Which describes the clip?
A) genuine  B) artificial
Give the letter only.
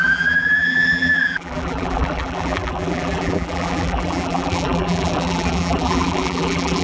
B